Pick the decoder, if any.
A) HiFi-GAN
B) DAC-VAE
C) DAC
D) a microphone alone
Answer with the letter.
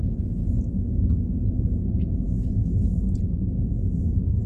D